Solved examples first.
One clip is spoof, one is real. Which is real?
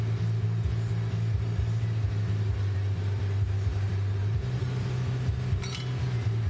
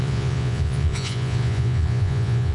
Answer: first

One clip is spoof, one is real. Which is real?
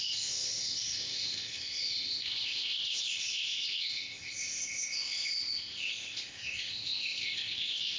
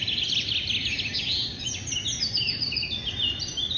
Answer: second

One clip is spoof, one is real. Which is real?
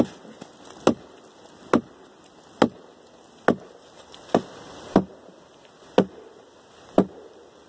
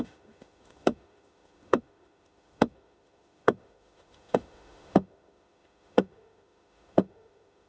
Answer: first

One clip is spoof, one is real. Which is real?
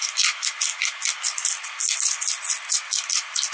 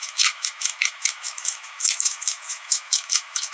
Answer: first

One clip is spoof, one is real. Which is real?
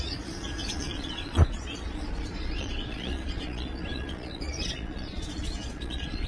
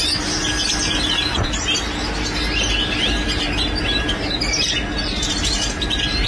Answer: second